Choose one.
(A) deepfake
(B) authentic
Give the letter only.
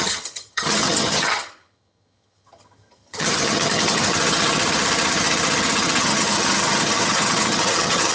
A